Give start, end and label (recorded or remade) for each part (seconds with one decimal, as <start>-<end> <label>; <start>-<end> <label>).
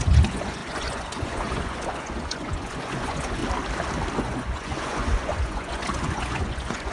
0.0-3.4 remade; 3.4-4.2 recorded; 4.2-6.9 remade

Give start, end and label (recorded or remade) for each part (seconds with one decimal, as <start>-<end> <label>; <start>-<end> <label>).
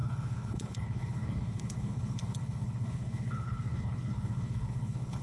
0.0-5.2 remade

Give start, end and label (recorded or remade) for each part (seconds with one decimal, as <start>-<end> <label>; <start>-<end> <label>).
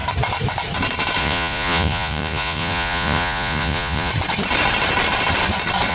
0.0-1.2 recorded; 1.2-4.1 remade; 4.1-5.9 recorded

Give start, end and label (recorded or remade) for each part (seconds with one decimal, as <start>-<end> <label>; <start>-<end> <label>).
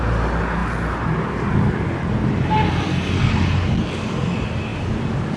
0.0-5.4 recorded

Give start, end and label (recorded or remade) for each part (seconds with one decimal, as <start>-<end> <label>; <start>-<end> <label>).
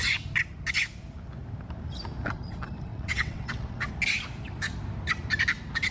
0.0-2.9 recorded; 2.9-3.9 remade; 3.9-5.9 recorded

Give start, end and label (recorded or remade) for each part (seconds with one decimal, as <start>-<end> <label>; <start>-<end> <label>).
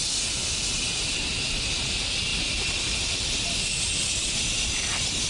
0.0-5.3 recorded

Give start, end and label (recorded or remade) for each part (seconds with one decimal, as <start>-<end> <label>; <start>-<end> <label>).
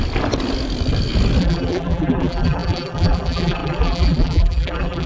0.0-1.4 recorded; 1.4-5.1 remade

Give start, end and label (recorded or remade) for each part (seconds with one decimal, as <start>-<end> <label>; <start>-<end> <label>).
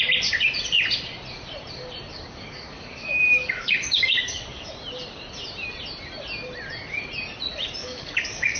0.0-2.1 recorded; 2.1-4.7 remade; 4.7-7.8 recorded; 7.8-8.6 remade